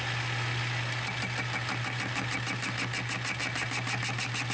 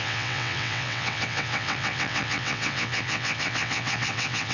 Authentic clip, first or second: first